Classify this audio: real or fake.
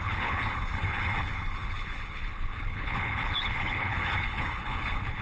fake